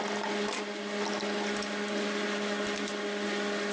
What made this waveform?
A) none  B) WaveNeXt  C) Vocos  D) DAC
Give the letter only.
A